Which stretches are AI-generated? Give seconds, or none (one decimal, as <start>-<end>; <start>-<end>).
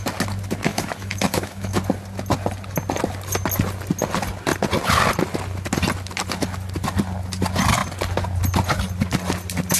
0.7-1.8